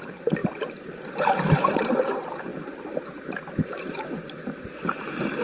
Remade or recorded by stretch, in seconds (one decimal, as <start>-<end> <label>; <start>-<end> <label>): 0.0-5.4 remade